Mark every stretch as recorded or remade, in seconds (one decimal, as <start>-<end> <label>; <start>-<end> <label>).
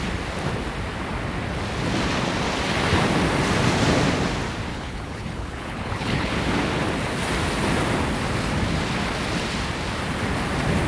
0.0-4.7 recorded; 4.7-6.3 remade; 6.3-10.9 recorded